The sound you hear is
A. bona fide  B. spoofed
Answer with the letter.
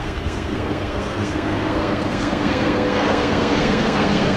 B